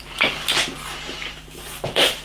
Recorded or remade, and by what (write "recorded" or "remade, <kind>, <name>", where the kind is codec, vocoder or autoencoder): remade, vocoder, BigVGAN v2